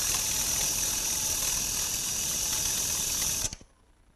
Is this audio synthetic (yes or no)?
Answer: no